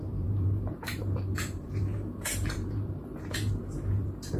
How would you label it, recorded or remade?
remade